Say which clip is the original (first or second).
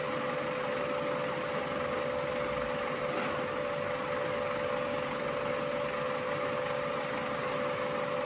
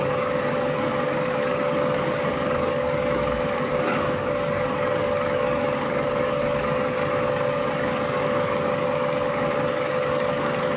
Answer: first